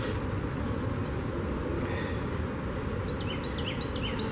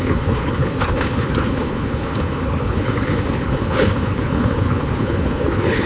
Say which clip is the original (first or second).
first